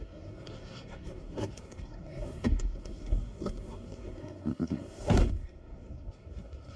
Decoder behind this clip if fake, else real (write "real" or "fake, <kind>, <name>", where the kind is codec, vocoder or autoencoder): fake, codec, SNAC